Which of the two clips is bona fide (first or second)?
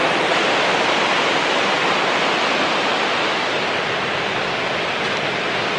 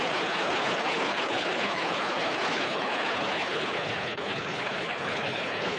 first